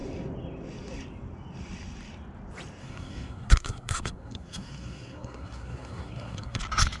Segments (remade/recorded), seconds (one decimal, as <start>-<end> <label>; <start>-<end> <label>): 0.0-2.8 recorded; 2.8-6.6 remade; 6.6-7.0 recorded